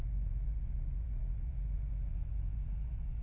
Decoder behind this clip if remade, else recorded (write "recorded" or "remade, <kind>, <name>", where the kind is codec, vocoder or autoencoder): remade, vocoder, Vocos